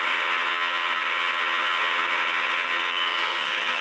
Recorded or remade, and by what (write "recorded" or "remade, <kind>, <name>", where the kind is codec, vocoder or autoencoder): remade, vocoder, HiFi-GAN